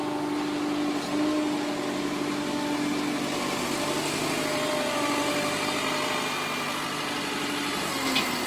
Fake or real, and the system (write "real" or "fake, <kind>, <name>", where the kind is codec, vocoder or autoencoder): real